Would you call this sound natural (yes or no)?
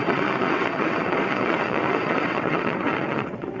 no